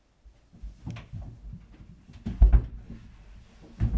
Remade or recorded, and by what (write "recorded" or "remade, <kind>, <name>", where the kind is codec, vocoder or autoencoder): recorded